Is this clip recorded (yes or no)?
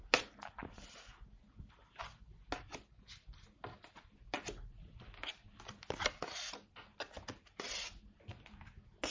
yes